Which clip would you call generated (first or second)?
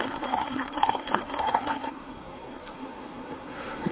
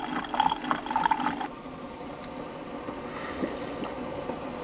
first